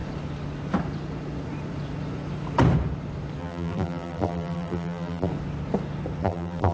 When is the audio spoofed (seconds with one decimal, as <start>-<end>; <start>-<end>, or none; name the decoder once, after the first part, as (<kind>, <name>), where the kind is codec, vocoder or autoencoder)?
3.4-5.3 (vocoder, BigVGAN v2); 6.2-6.7

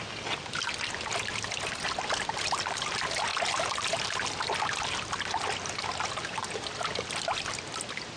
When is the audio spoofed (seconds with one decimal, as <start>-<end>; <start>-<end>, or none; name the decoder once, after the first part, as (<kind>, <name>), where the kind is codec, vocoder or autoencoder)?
none